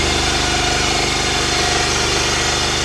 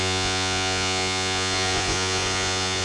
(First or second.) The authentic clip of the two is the first